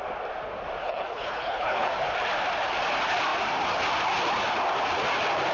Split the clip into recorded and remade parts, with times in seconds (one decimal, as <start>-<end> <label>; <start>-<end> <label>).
0.0-0.8 recorded; 0.8-1.9 remade; 1.9-5.5 recorded